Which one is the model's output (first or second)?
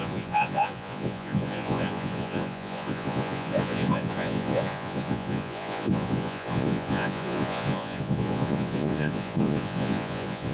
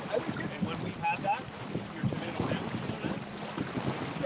first